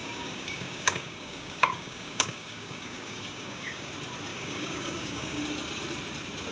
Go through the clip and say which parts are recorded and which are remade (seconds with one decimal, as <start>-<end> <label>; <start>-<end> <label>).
0.0-3.9 remade; 3.9-4.3 recorded; 4.3-5.4 remade; 5.4-6.5 recorded